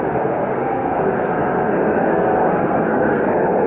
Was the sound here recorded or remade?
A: remade